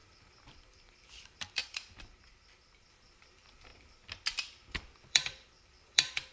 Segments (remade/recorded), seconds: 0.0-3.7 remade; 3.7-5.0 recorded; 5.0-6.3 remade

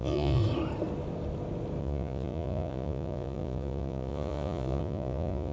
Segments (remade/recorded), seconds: 0.0-0.4 remade; 0.4-1.8 recorded; 1.8-5.5 remade